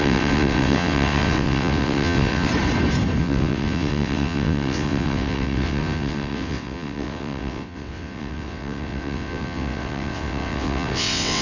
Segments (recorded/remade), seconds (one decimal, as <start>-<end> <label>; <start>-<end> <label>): 0.0-2.5 remade; 2.5-3.2 recorded; 3.2-11.4 remade